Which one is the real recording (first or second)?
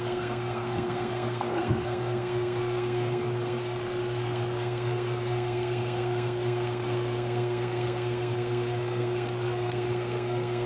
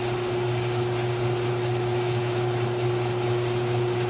second